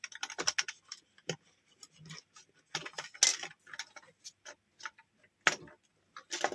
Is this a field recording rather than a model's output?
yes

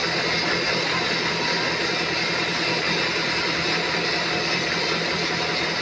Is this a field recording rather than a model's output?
yes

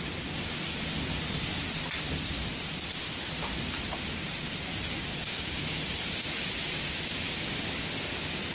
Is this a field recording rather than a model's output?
yes